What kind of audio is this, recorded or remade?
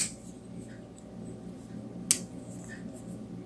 recorded